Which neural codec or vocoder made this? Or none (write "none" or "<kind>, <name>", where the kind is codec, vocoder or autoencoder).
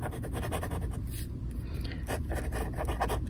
none